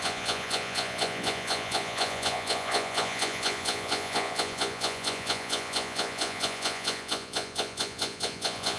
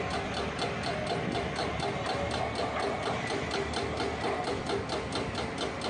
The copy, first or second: first